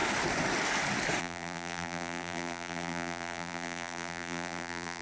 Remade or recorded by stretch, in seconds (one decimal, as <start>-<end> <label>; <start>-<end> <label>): 0.0-1.2 recorded; 1.2-5.0 remade

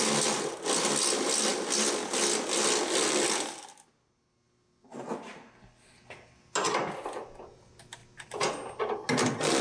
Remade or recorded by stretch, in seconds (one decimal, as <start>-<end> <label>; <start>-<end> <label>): 0.0-9.6 recorded